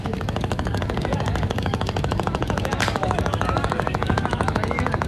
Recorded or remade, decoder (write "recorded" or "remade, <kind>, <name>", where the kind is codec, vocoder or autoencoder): remade, codec, DAC